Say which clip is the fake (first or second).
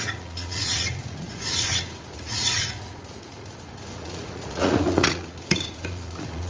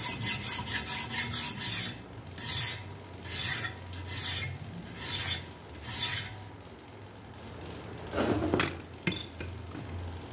first